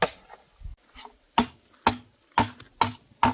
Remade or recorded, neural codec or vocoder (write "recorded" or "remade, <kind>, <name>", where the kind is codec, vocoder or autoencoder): recorded